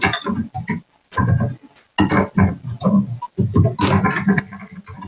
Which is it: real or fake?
real